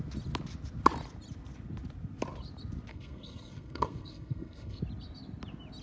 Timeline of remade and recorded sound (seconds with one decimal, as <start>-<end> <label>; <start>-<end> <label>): 0.0-2.9 recorded; 2.9-4.8 remade; 4.8-5.8 recorded